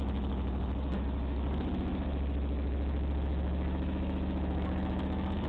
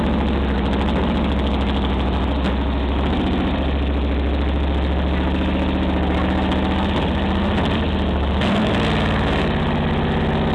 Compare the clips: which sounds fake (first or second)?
first